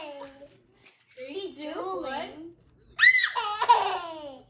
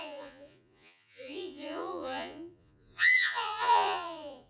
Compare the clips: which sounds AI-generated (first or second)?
second